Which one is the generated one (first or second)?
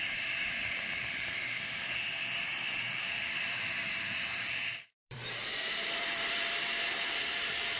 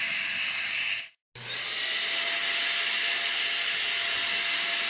first